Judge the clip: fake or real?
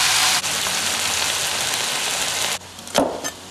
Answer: real